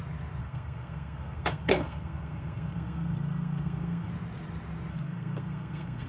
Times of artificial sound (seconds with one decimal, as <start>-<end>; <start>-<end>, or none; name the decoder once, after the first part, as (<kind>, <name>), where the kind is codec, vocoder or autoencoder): 0.4-4.1 (codec, SNAC); 4.9-6.1